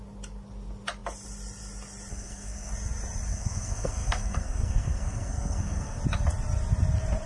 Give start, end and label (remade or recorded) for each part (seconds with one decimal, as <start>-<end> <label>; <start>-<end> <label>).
0.0-2.1 recorded; 2.1-2.7 remade; 2.7-3.3 recorded; 3.3-6.0 remade; 6.0-7.3 recorded